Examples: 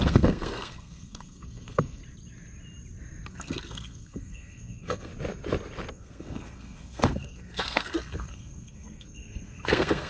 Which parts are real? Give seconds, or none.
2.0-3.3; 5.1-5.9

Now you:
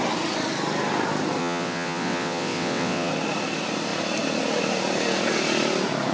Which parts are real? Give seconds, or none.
0.0-1.4; 3.1-6.1

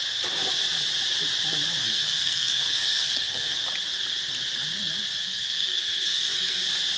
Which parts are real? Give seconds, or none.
0.0-1.8; 3.6-5.2; 6.6-7.0

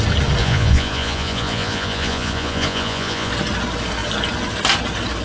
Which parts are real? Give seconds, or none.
0.0-0.4; 3.3-5.2